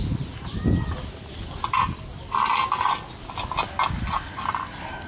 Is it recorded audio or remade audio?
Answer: recorded